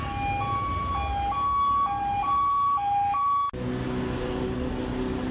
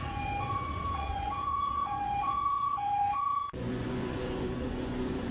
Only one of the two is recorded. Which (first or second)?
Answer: first